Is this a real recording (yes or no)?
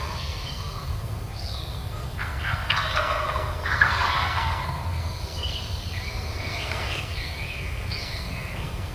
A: no